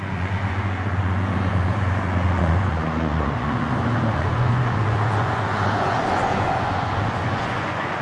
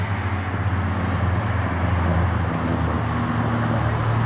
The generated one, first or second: first